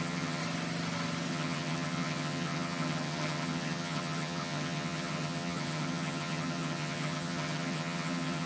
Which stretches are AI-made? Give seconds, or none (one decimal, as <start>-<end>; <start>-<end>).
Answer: 0.0-0.4; 1.3-8.5